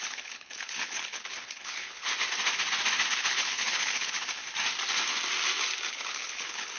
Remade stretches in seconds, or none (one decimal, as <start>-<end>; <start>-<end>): 0.0-2.1; 3.1-4.4; 5.9-6.8